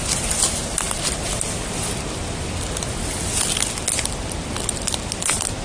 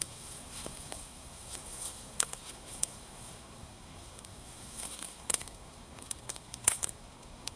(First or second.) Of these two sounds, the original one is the first